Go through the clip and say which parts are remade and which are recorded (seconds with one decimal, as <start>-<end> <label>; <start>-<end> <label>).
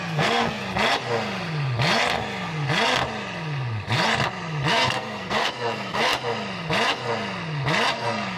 0.0-0.6 remade; 0.6-4.7 recorded; 4.7-6.1 remade; 6.1-7.9 recorded; 7.9-8.4 remade